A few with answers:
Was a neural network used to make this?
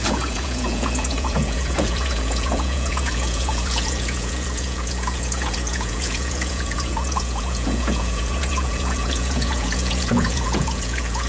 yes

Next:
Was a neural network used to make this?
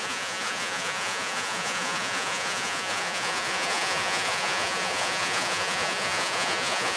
yes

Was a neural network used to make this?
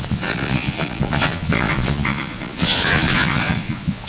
yes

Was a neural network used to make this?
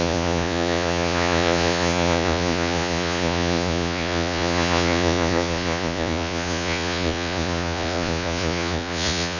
yes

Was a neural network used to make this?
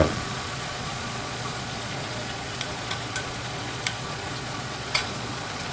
yes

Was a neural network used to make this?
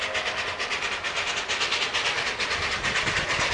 no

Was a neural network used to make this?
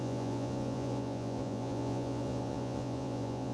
yes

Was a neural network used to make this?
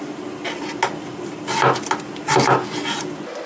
no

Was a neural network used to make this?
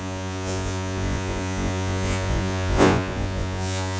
yes